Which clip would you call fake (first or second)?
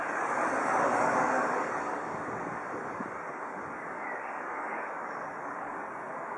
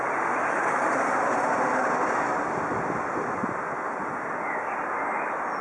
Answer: first